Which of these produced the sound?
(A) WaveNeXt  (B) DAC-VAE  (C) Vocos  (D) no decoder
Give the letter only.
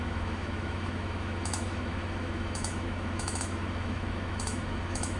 B